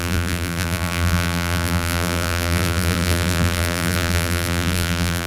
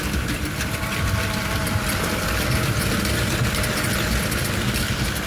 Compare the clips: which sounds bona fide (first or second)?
second